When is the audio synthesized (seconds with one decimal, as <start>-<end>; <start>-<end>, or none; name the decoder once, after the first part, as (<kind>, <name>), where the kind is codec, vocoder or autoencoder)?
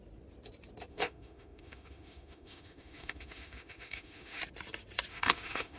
0.9-4.4 (autoencoder, DAC-VAE); 5.1-5.8